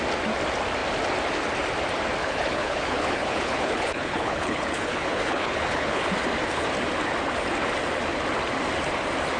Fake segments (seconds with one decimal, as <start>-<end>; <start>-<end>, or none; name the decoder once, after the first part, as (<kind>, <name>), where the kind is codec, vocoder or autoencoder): 2.2-6.0 (codec, HILCodec)